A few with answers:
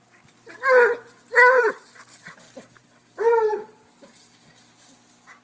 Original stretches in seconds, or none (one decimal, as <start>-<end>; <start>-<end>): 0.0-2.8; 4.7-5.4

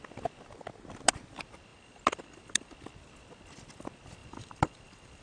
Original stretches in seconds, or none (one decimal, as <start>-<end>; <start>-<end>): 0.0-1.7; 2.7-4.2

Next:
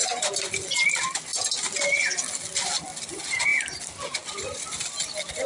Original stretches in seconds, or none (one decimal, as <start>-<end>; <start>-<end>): 1.3-2.2

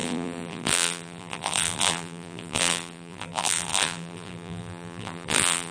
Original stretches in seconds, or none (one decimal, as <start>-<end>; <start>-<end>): none

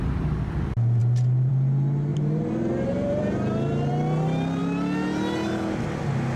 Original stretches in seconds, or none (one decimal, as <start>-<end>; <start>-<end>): 0.0-2.1; 3.9-6.4